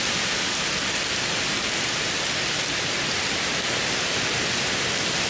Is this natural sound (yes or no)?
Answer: yes